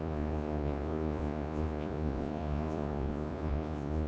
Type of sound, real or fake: fake